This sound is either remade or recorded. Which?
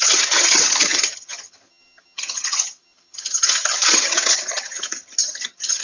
remade